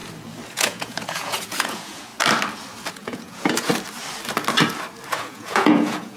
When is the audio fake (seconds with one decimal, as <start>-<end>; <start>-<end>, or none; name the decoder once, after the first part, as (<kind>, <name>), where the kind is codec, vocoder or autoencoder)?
0.5-2.1 (vocoder, Vocos); 2.9-3.7; 5.1-6.2